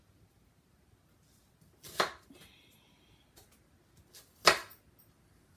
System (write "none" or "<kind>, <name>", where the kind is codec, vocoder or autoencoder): none